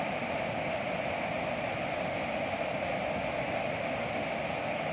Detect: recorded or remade recorded